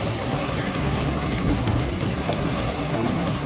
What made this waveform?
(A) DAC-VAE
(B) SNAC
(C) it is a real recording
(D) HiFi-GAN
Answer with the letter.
B